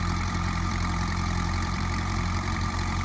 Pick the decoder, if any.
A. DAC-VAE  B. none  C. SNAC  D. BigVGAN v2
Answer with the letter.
D